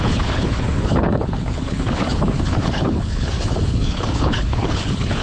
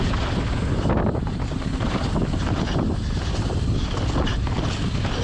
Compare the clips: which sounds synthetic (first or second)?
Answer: first